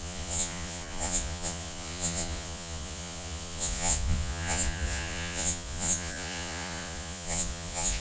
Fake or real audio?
fake